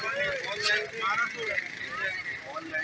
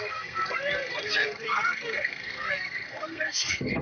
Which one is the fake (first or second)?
second